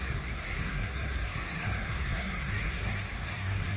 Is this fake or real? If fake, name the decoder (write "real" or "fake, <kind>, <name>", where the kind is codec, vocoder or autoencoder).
fake, codec, SNAC